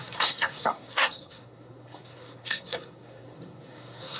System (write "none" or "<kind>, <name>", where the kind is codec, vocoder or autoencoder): codec, SNAC